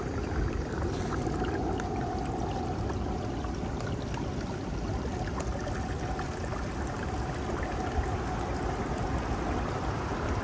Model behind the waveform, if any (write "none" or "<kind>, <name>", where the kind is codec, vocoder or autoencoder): none